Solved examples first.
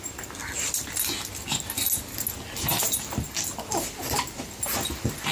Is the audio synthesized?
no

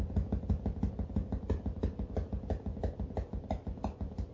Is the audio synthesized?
no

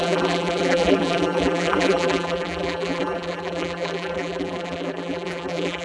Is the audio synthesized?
yes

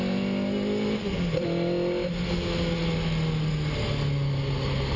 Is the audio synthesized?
no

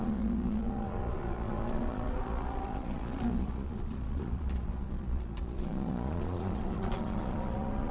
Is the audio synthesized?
yes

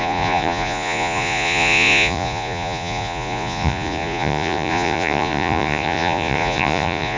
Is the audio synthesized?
yes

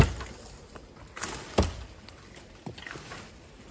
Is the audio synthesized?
no